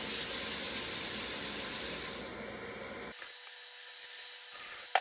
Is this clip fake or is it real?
real